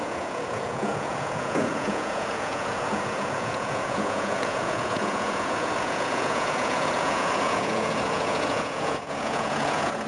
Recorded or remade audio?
remade